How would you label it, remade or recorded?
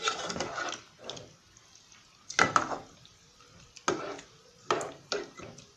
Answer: recorded